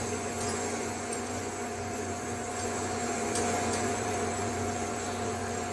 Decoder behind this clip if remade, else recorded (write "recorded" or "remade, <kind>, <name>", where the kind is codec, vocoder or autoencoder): remade, vocoder, Vocos